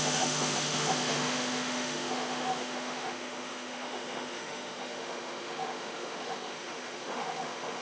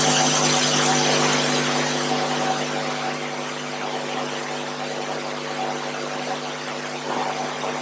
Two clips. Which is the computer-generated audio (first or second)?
first